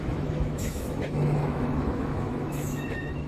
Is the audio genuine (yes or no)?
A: no